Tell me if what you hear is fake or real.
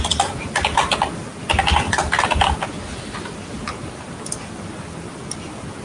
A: real